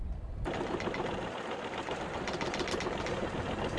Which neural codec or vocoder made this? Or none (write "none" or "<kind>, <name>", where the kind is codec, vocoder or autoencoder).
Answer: none